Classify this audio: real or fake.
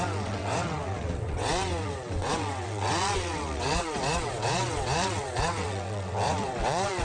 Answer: fake